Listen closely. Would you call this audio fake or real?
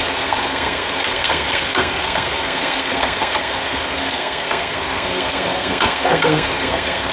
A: fake